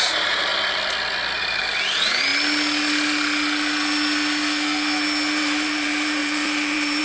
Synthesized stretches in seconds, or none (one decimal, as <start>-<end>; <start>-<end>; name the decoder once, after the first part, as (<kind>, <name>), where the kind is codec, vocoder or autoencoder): 0.0-0.5 (vocoder, BigVGAN v2); 1.4-2.3; 5.4-7.0